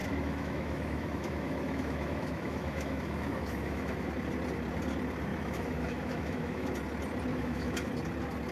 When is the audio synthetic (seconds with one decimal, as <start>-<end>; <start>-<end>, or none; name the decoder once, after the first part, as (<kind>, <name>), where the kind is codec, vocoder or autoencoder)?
0.0-4.1 (autoencoder, DAC-VAE); 5.3-6.7; 7.3-7.9